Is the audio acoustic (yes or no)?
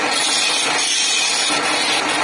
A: yes